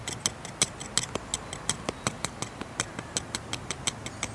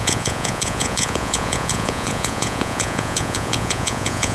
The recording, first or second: first